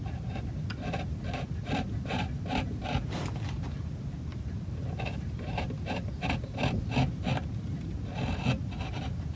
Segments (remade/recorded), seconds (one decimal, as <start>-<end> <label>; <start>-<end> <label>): 0.0-9.4 recorded